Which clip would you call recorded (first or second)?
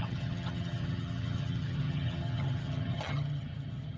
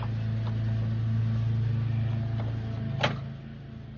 second